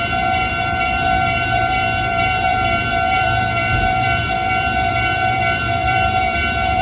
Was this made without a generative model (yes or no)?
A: no